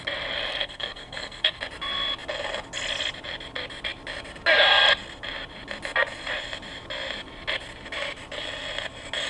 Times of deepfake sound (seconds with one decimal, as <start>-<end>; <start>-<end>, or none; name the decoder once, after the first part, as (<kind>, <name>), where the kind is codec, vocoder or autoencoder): 0.5-1.6 (codec, SNAC)